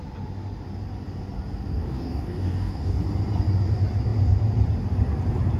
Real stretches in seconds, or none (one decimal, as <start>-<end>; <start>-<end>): 0.0-1.7; 3.0-5.6